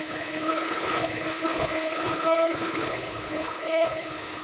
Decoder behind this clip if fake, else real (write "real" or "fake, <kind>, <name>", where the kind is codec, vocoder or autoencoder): fake, codec, HILCodec